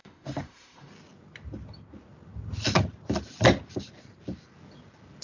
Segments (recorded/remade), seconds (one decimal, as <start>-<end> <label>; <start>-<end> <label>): 0.0-0.9 remade; 0.9-5.2 recorded

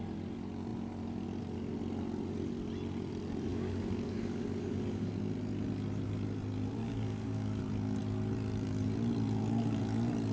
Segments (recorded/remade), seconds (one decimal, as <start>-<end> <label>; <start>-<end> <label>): 0.0-3.5 recorded; 3.5-5.1 remade; 5.1-6.8 recorded; 6.8-7.6 remade; 7.6-10.3 recorded

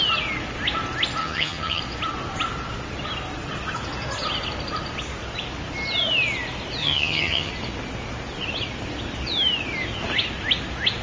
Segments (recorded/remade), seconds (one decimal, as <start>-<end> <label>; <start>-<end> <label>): 0.0-1.2 recorded; 1.2-1.8 remade; 1.8-6.8 recorded; 6.8-7.5 remade; 7.5-11.0 recorded

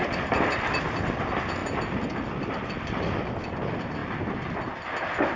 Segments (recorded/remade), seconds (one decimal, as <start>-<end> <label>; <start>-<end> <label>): 0.0-5.4 recorded

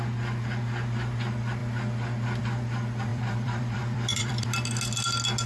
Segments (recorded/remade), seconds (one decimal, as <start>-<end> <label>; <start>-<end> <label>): 0.0-3.1 recorded; 3.1-4.4 remade; 4.4-5.5 recorded

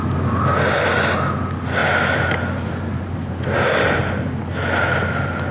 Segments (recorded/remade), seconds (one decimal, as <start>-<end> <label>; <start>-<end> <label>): 0.0-5.5 recorded

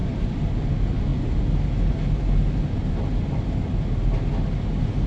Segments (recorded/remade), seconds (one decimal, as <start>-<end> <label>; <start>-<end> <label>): 0.0-5.1 recorded

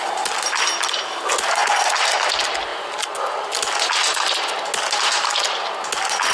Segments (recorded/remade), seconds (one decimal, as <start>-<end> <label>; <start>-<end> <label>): 0.0-6.3 recorded